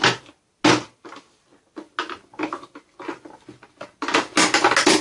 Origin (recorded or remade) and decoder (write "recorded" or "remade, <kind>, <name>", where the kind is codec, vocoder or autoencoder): recorded